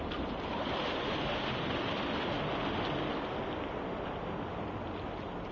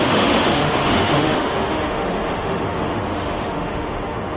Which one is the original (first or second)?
first